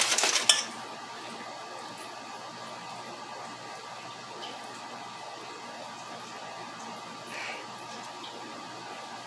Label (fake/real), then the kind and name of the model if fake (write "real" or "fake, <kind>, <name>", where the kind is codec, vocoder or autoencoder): real